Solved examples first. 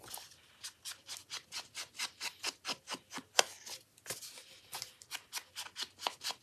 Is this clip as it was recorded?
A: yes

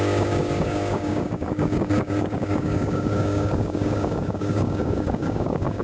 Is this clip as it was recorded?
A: no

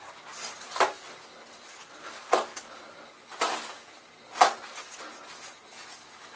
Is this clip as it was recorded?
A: yes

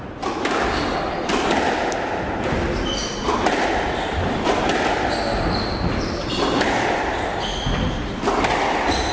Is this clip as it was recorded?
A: yes